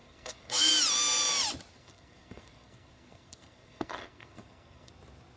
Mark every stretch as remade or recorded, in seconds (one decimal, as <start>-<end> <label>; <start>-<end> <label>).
0.0-0.7 remade; 0.7-1.7 recorded; 1.7-4.9 remade; 4.9-5.4 recorded